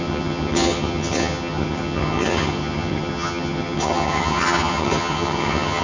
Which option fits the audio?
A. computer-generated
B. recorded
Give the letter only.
A